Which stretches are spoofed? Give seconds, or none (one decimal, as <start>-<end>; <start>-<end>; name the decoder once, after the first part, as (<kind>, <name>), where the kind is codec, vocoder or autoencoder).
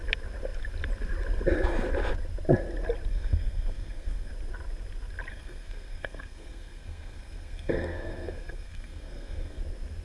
3.1-4.3 (codec, SNAC); 5.3-9.6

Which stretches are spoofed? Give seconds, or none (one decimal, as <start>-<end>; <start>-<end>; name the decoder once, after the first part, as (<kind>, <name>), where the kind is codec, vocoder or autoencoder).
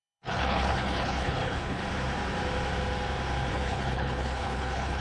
0.0-1.8 (codec, HILCodec); 3.5-5.0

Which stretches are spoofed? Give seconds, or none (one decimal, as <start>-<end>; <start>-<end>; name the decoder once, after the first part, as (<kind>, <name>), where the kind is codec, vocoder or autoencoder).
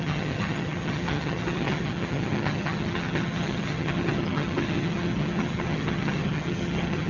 0.0-7.1 (vocoder, HiFi-GAN)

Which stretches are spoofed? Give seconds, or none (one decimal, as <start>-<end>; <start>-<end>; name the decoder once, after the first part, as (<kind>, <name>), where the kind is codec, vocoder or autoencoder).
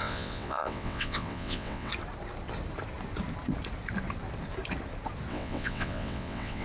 0.0-1.9 (vocoder, WaveNeXt); 5.3-6.6